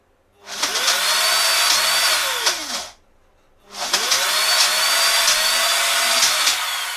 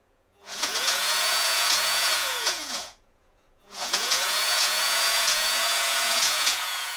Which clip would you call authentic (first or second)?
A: first